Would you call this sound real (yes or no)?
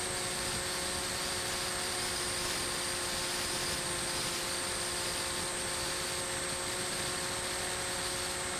yes